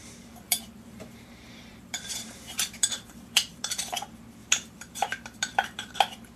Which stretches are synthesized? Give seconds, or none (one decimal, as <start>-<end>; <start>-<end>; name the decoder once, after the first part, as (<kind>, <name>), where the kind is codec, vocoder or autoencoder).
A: 0.0-3.8 (vocoder, BigVGAN v2); 4.4-5.9